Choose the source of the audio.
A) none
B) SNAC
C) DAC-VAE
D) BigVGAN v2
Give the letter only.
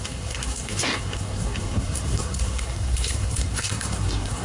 B